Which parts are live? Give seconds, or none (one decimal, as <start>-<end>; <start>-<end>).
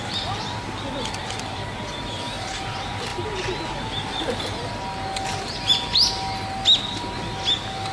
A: 0.0-7.9